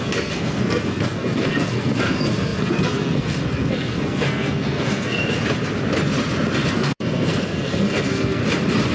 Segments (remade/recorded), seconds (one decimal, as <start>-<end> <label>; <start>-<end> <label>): 0.0-5.2 remade; 5.2-6.7 recorded; 6.7-8.4 remade; 8.4-8.9 recorded